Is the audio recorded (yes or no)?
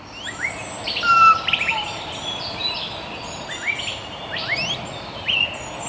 yes